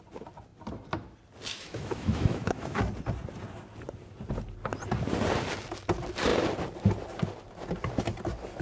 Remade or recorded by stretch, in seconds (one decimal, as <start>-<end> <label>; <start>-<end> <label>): 0.0-1.5 recorded; 1.5-2.8 remade; 2.8-8.6 recorded